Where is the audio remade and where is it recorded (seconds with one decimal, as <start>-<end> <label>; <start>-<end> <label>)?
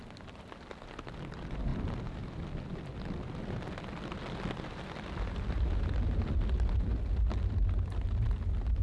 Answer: 0.0-8.8 recorded